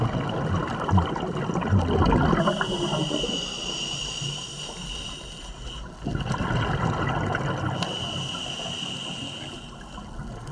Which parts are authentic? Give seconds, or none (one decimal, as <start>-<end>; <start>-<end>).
0.0-4.0; 4.6-10.5